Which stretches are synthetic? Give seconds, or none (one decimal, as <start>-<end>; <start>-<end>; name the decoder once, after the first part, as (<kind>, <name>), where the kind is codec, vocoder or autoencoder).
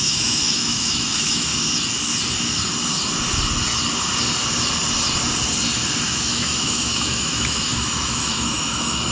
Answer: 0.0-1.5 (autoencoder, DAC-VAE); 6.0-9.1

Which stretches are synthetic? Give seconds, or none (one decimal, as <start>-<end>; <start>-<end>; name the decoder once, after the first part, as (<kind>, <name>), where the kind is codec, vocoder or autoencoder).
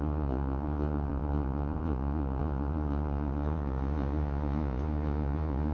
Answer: 0.0-5.7 (vocoder, Vocos)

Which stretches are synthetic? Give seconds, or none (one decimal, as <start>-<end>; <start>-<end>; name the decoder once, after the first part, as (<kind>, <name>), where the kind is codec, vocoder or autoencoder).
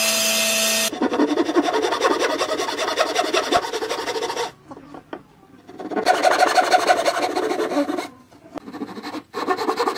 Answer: none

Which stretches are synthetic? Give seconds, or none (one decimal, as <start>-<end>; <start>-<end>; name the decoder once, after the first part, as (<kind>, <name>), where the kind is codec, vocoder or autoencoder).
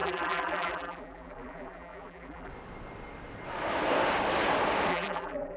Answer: 0.0-2.5 (vocoder, BigVGAN v2); 4.9-5.6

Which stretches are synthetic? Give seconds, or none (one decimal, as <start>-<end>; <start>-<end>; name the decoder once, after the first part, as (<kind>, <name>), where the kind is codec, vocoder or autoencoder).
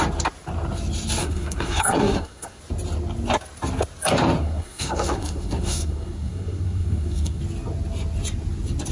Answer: 1.2-2.6 (codec, SNAC); 4.4-7.4